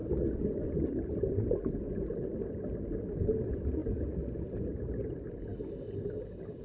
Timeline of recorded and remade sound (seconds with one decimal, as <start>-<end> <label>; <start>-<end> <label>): 0.0-6.6 recorded